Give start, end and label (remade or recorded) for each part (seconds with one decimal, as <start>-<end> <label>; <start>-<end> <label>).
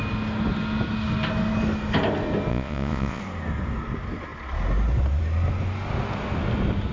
0.0-2.5 recorded; 2.5-3.2 remade; 3.2-6.9 recorded